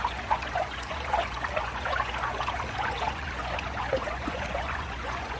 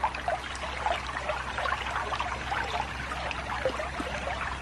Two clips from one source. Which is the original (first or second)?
second